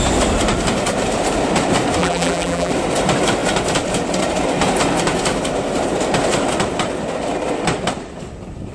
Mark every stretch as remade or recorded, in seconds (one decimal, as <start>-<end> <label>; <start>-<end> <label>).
0.0-2.0 recorded; 2.0-2.7 remade; 2.7-8.7 recorded